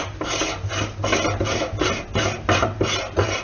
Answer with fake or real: real